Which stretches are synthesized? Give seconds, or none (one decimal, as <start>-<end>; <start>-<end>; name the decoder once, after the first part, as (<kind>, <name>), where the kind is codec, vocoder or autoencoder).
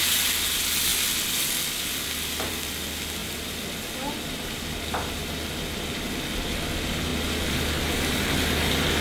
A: none